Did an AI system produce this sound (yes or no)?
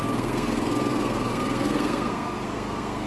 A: yes